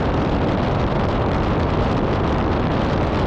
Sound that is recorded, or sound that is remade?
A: recorded